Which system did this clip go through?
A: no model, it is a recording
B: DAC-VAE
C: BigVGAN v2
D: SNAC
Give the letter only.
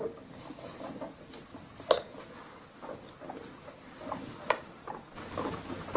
A